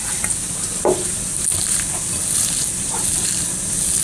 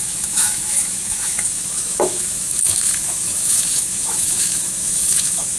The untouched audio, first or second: first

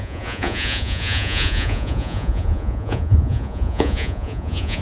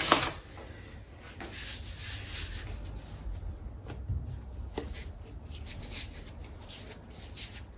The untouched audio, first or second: second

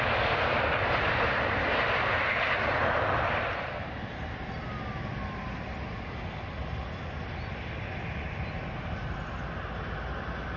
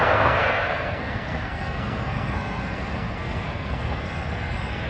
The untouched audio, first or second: first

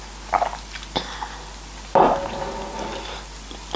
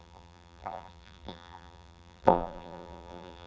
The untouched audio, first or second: first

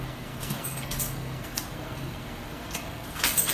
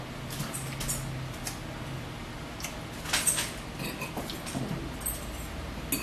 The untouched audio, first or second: second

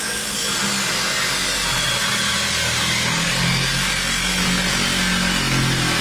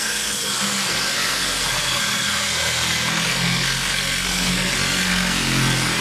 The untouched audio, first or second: first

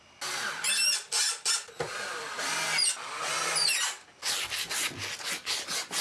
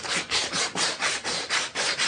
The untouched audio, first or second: first